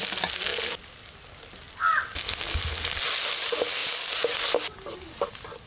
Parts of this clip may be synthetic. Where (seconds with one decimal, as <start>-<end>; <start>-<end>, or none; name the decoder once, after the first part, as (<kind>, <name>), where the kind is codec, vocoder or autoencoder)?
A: none